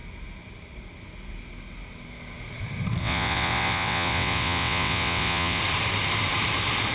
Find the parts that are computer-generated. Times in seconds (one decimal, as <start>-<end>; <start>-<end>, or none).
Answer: 3.0-5.6